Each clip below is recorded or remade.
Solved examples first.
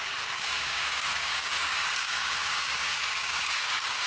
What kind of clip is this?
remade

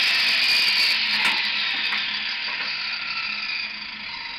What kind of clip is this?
recorded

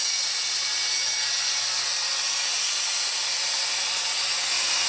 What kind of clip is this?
recorded